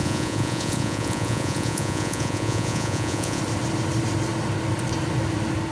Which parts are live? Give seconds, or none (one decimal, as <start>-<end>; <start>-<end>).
3.4-5.7